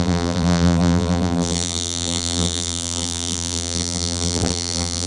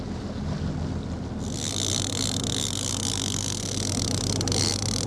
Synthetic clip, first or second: first